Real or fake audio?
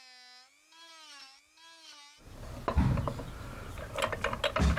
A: real